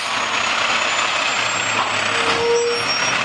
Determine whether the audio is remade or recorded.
recorded